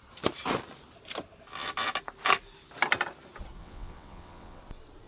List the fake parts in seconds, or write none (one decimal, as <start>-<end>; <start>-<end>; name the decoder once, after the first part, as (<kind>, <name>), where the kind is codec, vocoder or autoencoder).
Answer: 3.6-4.6 (vocoder, WaveNeXt)